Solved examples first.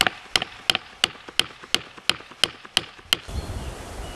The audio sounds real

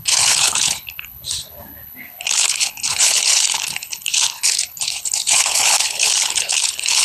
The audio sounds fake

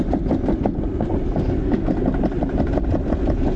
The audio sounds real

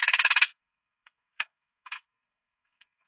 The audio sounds fake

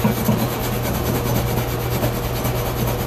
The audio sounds real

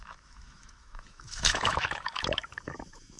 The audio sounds fake